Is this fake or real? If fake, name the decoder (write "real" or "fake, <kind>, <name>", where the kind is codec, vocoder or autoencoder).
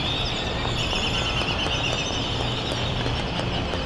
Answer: real